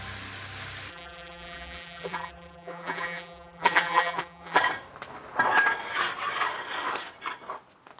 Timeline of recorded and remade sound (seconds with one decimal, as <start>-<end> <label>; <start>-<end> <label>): 0.0-0.9 recorded; 0.9-4.6 remade; 4.6-8.0 recorded